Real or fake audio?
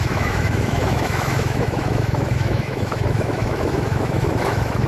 fake